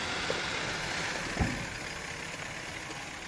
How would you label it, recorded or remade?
recorded